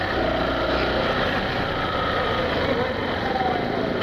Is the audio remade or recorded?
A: recorded